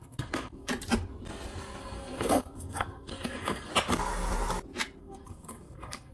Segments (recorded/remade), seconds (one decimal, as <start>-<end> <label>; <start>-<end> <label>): 0.0-0.7 remade; 0.7-1.8 recorded; 1.8-3.7 remade; 3.7-5.0 recorded; 5.0-6.1 remade